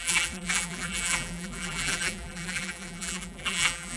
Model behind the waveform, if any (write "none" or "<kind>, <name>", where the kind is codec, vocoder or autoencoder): vocoder, BigVGAN v2